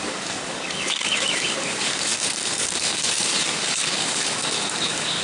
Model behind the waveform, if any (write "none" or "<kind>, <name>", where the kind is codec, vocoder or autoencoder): codec, DAC